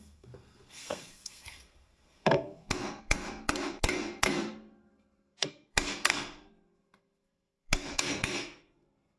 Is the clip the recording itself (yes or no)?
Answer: no